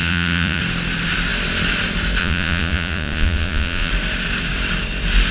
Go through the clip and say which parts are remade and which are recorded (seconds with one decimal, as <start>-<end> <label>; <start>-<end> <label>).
0.0-0.6 remade; 0.6-2.2 recorded; 2.2-3.9 remade; 3.9-5.3 recorded